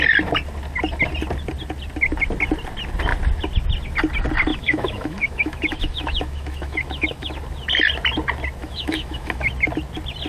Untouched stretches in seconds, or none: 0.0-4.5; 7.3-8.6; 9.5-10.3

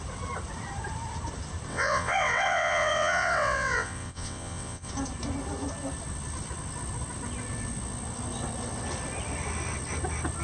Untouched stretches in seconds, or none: 0.0-1.7; 4.9-10.4

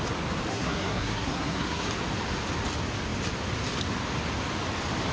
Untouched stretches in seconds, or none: 0.0-0.5; 1.9-5.1